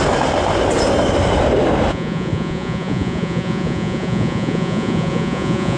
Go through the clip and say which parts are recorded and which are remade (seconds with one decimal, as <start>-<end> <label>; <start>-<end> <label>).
0.0-1.9 recorded; 1.9-5.8 remade